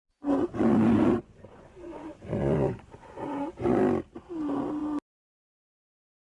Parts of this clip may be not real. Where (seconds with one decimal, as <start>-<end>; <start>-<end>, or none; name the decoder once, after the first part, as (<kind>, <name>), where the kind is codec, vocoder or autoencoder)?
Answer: 0.0-3.8 (vocoder, Vocos)